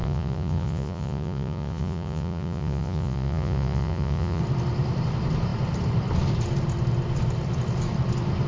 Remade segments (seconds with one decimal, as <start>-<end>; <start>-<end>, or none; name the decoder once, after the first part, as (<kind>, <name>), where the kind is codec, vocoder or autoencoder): 0.0-4.4 (vocoder, Vocos)

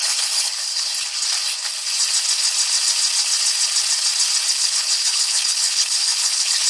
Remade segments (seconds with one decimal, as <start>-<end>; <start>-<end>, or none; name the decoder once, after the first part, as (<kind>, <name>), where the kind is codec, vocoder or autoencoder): 0.0-0.9 (codec, HILCodec); 4.5-6.7